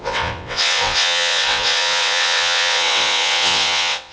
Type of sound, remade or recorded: remade